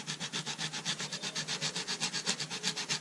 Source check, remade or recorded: recorded